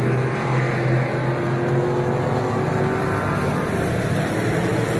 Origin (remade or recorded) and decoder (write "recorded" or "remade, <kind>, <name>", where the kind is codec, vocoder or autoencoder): recorded